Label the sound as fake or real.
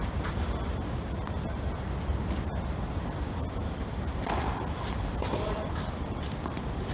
real